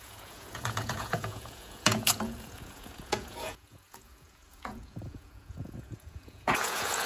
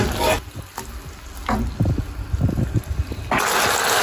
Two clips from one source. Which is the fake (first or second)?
first